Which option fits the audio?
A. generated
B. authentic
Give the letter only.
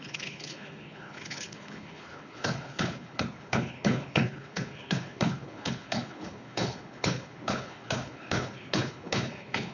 A